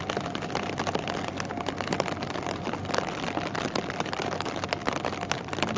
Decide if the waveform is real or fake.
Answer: real